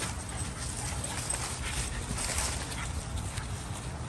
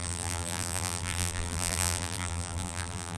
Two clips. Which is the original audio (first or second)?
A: first